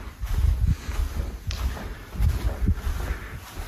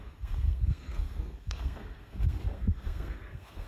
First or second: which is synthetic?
second